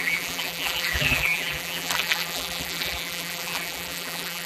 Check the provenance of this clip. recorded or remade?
remade